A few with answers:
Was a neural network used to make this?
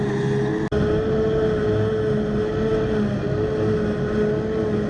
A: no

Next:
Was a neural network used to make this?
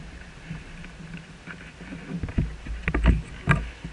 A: no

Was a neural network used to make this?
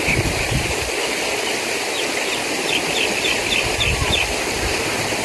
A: no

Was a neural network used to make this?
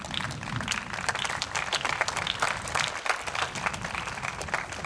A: no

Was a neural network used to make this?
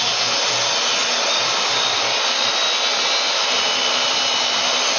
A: no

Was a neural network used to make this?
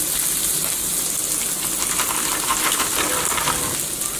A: no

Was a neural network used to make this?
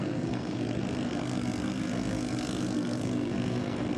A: yes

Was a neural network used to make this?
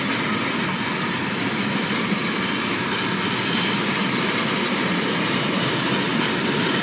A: no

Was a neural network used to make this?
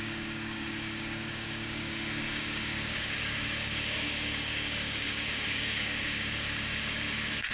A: yes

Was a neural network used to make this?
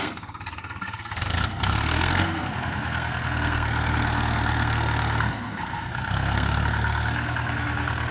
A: yes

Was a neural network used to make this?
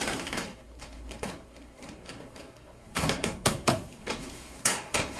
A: yes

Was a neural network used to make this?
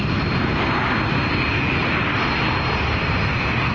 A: no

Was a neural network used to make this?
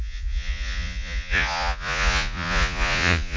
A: yes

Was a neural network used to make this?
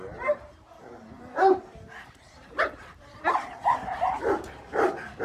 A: yes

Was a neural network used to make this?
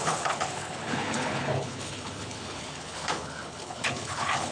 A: yes